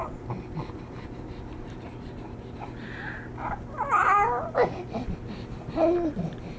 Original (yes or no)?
yes